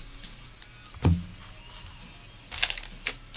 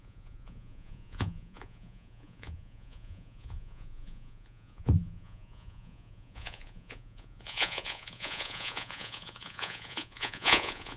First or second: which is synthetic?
second